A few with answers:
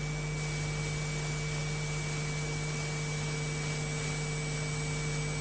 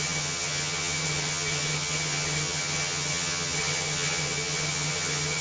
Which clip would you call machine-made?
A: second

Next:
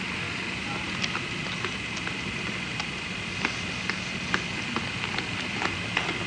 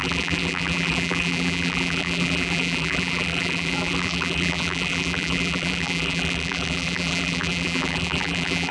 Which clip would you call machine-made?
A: second